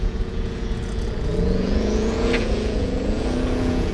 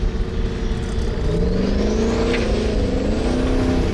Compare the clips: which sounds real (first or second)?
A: second